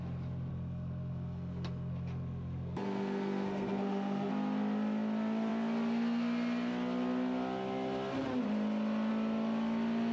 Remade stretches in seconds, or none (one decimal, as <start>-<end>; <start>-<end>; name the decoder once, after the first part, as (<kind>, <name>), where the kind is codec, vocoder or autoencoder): 0.5-4.3 (codec, SNAC)

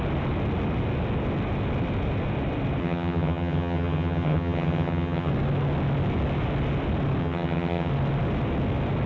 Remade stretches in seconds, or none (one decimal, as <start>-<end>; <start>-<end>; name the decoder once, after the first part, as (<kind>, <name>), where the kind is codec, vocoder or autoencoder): 2.8-5.3 (vocoder, HiFi-GAN); 7.2-7.9

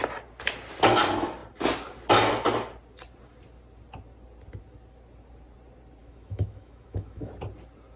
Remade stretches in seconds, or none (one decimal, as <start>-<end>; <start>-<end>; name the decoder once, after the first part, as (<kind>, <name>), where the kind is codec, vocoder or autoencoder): 6.0-7.3 (autoencoder, DAC-VAE)

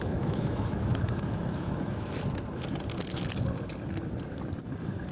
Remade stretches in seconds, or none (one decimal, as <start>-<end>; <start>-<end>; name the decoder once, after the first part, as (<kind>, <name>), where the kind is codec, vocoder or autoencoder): 0.0-2.1 (autoencoder, DAC-VAE)